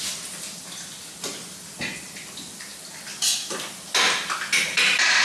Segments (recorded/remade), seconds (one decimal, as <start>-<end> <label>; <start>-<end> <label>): 0.0-5.2 recorded